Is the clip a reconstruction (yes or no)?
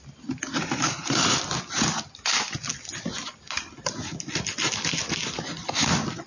no